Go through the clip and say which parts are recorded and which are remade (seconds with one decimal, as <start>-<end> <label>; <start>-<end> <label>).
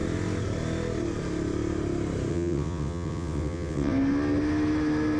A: 0.0-2.3 recorded; 2.3-3.9 remade; 3.9-5.2 recorded